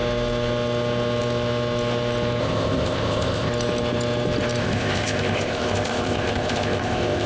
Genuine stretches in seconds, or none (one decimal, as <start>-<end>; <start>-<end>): 0.0-2.4; 3.5-4.6